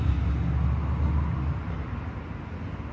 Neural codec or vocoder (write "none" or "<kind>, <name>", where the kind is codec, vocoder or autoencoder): none